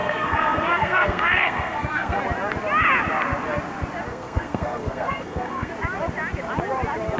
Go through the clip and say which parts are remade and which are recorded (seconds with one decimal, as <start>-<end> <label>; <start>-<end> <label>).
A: 0.0-2.2 remade; 2.2-4.1 recorded; 4.1-5.7 remade; 5.7-7.2 recorded